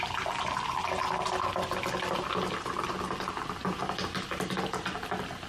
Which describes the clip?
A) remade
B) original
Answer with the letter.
B